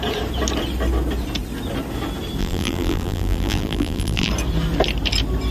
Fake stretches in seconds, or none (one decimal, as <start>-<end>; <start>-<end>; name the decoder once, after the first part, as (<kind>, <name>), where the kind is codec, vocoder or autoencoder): 2.4-4.3 (vocoder, BigVGAN v2)